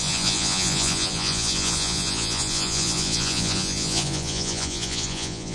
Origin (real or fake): fake